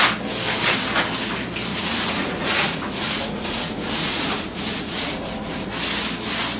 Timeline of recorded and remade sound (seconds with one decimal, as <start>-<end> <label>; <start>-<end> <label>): 0.0-1.7 recorded; 1.7-5.7 remade; 5.7-6.6 recorded